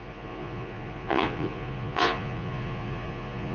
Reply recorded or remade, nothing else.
remade